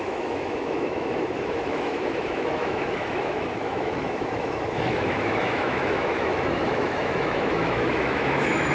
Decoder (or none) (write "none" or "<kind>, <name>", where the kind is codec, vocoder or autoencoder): autoencoder, DAC-VAE